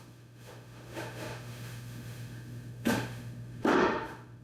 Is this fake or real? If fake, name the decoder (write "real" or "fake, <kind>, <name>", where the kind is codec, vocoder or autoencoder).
fake, autoencoder, DAC-VAE